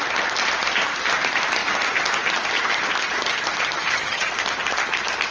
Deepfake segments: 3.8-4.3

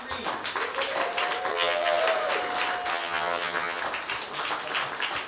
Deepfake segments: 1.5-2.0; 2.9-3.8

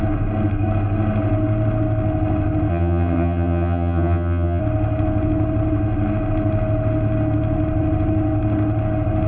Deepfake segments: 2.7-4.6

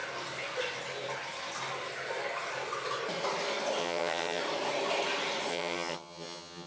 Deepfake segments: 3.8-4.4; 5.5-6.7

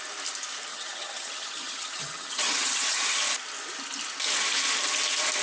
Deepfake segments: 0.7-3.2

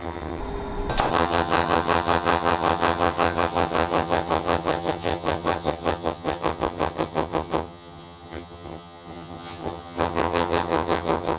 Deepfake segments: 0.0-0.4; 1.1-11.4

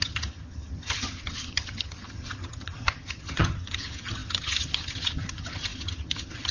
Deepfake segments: 0.0-6.5

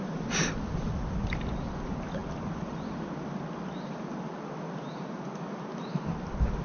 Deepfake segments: none